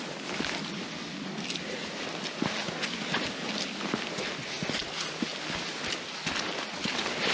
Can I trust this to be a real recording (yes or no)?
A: yes